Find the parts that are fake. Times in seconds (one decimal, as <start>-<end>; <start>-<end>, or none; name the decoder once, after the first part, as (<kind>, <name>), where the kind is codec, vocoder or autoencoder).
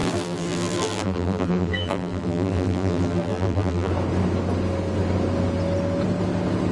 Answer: 0.0-3.9 (vocoder, BigVGAN v2)